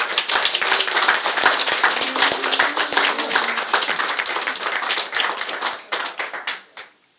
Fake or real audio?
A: real